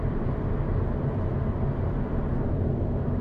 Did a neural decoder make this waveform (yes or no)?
no